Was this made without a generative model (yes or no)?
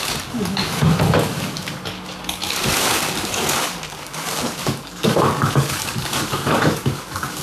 no